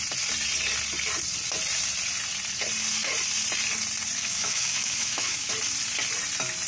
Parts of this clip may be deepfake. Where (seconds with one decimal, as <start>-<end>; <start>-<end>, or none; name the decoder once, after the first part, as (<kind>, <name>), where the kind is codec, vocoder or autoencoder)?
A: 4.2-5.5 (autoencoder, DAC-VAE)